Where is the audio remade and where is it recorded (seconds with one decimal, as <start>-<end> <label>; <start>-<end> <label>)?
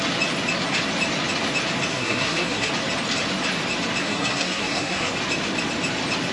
0.0-1.9 recorded; 1.9-2.7 remade; 2.7-4.0 recorded; 4.0-5.1 remade; 5.1-6.3 recorded